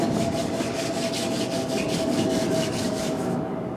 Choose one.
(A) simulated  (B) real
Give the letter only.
A